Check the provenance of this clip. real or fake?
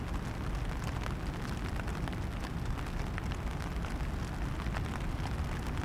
real